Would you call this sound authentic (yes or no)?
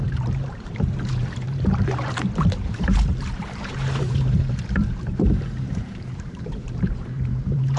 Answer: no